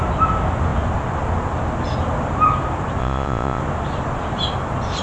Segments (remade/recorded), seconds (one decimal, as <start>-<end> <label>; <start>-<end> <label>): 0.0-3.0 recorded; 3.0-3.6 remade; 3.6-5.0 recorded